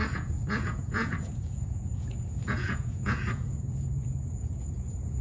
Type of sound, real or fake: fake